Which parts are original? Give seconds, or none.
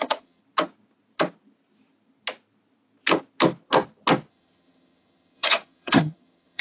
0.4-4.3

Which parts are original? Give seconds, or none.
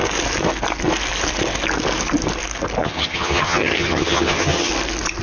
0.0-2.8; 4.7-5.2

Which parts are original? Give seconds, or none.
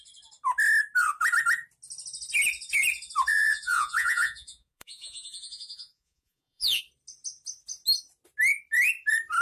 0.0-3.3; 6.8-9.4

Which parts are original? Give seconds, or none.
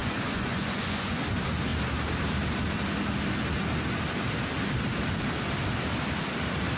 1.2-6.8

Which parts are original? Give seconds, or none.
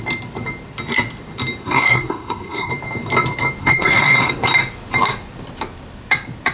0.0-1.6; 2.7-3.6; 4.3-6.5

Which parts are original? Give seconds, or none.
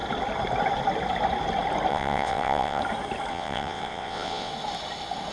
0.0-1.9; 2.8-3.3; 4.5-5.3